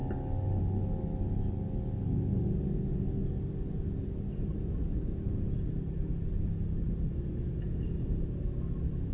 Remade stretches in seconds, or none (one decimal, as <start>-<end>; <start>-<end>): none